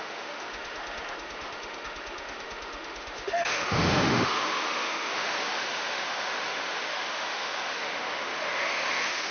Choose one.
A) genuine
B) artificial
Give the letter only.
B